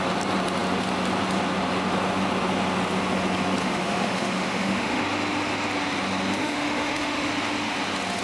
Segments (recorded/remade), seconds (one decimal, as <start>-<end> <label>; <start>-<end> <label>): 0.0-3.6 recorded; 3.6-5.0 remade; 5.0-6.4 recorded; 6.4-7.3 remade; 7.3-8.2 recorded